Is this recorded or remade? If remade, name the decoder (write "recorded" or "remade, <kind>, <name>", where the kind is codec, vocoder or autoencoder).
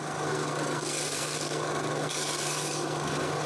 remade, codec, SNAC